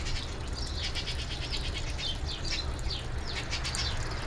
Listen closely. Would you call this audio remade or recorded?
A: recorded